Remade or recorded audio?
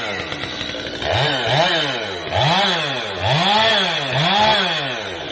recorded